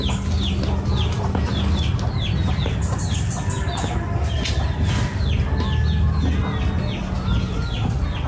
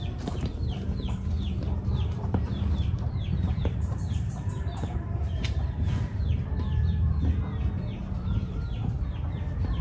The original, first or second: first